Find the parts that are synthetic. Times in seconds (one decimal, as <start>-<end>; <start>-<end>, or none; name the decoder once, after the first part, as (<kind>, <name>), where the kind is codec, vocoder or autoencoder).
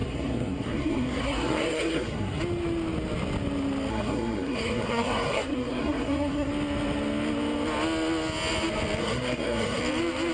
0.0-2.4 (codec, SNAC); 3.9-6.5; 9.0-9.8